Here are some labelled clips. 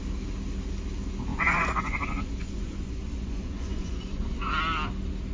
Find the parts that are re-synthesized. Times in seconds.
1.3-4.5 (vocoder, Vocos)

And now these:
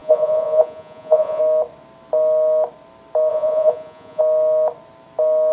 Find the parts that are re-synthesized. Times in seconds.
0.0-1.4 (vocoder, Vocos); 3.3-4.2

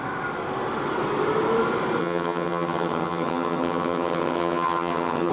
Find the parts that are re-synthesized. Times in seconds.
2.0-5.3 (vocoder, HiFi-GAN)

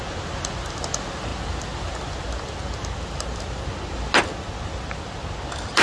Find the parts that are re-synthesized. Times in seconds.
none

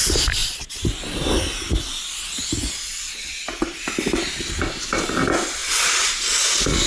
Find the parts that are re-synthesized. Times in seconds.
none

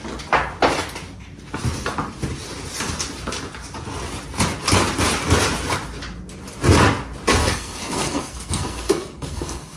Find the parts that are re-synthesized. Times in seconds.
7.4-9.8 (codec, SNAC)